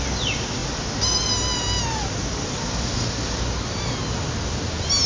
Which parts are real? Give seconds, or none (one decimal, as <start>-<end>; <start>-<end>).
0.0-5.1